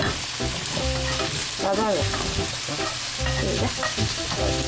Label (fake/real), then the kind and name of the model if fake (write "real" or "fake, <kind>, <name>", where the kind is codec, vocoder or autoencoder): real